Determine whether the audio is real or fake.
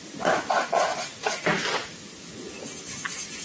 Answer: real